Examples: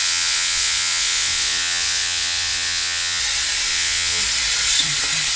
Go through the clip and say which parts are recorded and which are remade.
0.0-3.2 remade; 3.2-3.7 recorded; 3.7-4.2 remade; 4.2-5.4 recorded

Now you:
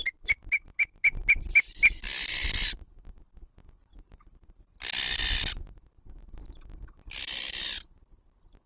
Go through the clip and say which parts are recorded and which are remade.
0.0-8.7 recorded

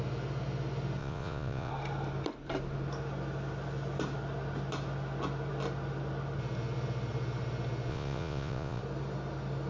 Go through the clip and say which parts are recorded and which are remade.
0.0-1.0 recorded; 1.0-1.7 remade; 1.7-7.9 recorded; 7.9-8.8 remade; 8.8-9.7 recorded

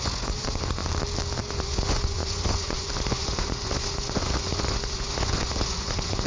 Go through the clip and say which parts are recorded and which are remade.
0.0-0.8 remade; 0.8-1.4 recorded; 1.4-6.3 remade

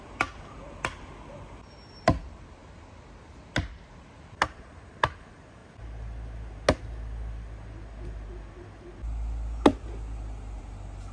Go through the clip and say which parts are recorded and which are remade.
0.0-11.1 recorded

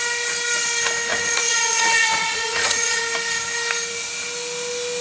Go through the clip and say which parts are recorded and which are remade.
0.0-1.1 recorded; 1.1-3.0 remade; 3.0-5.0 recorded

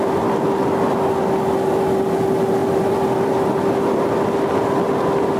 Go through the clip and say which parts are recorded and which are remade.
0.0-2.6 recorded; 2.6-3.5 remade; 3.5-5.4 recorded